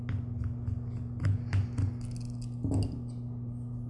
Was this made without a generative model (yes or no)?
yes